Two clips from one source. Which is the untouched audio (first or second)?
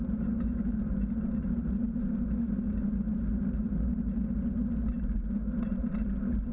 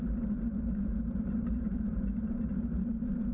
first